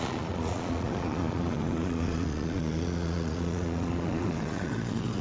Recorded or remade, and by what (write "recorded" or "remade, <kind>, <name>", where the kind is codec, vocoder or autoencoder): remade, vocoder, Vocos